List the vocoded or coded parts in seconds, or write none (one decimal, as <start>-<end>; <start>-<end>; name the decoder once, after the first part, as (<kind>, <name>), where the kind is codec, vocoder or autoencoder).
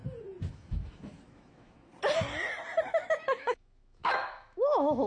0.5-1.9 (autoencoder, DAC-VAE); 2.9-5.1